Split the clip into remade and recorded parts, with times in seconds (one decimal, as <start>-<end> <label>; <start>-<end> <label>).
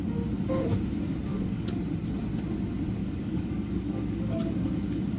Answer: 0.0-1.3 recorded; 1.3-1.8 remade; 1.8-3.0 recorded; 3.0-4.7 remade; 4.7-5.2 recorded